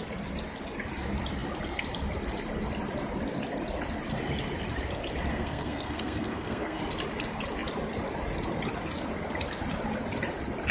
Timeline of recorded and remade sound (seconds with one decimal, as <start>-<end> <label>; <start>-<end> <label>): 0.0-5.3 recorded; 5.3-6.8 remade; 6.8-10.7 recorded